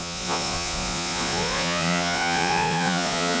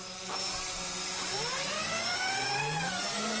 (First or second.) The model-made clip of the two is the first